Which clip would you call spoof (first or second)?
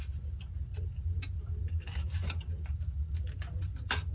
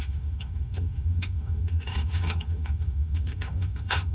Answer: second